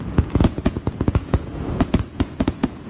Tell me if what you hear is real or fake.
fake